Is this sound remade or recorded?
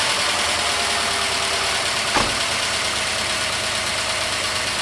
recorded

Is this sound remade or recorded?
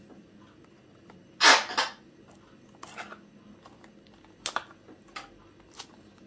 recorded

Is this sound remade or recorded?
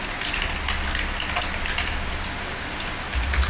recorded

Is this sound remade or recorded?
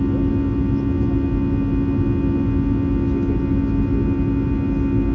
recorded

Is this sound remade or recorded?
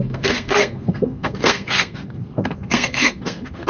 remade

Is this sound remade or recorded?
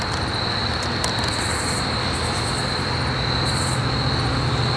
recorded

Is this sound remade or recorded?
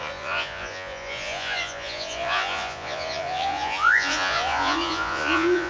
remade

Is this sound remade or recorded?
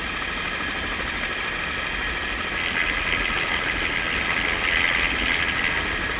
recorded